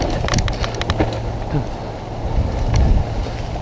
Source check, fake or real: real